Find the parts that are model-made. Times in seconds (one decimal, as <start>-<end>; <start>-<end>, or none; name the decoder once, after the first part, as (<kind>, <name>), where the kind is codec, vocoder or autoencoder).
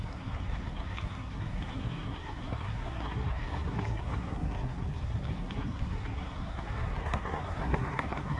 0.0-8.4 (codec, SNAC)